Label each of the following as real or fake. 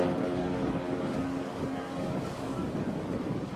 fake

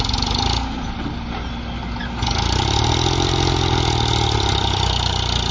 real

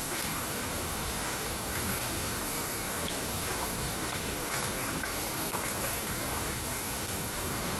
fake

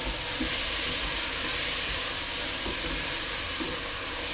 real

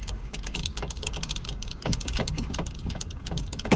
fake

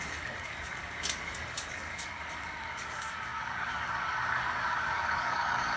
fake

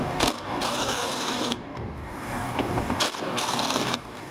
fake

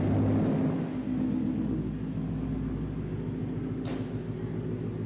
real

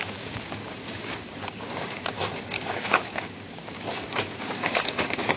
fake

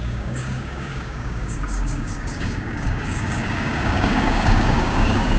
fake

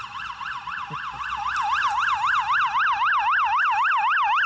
real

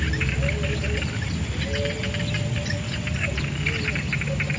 real